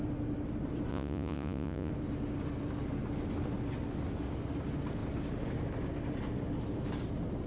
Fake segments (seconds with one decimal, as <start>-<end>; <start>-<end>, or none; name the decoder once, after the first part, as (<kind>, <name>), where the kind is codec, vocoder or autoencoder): 0.9-1.9 (vocoder, Vocos)